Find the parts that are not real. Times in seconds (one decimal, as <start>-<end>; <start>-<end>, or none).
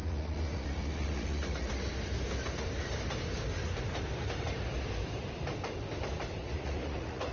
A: 0.0-1.7; 6.4-7.3